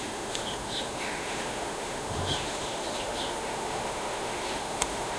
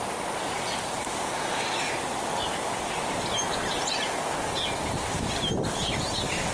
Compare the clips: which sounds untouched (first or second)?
second